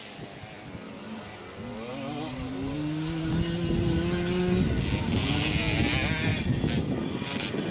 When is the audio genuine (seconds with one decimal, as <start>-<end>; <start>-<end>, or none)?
0.0-7.7